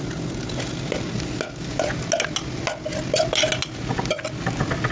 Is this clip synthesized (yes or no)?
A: no